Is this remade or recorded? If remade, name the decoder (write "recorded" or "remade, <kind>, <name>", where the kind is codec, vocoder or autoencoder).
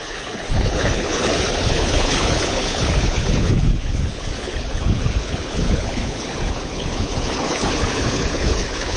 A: remade, codec, HILCodec